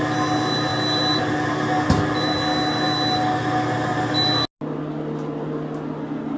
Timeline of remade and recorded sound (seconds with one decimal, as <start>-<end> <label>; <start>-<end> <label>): 0.0-6.4 recorded